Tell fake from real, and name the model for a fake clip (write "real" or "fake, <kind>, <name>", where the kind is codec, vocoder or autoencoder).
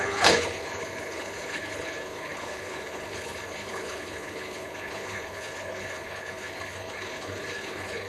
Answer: fake, codec, HILCodec